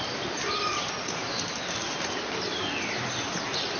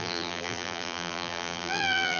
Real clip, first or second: first